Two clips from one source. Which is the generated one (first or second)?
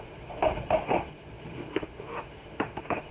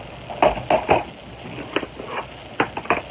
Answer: first